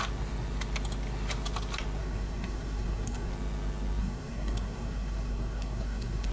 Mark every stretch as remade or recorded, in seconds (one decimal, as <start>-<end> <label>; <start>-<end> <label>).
0.0-2.0 recorded; 2.0-3.3 remade; 3.3-4.0 recorded; 4.0-6.3 remade